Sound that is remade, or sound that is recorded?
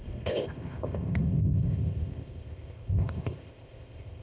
remade